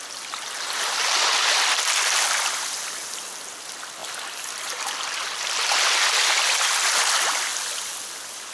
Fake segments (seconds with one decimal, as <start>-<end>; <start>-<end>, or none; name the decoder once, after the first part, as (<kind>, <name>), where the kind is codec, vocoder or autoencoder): none